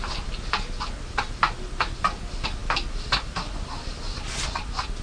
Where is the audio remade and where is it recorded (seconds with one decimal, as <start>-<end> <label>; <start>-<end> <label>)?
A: 0.0-5.0 recorded